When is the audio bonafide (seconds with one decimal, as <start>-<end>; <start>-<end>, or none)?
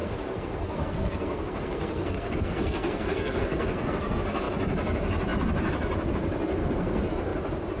4.2-6.6; 7.1-7.8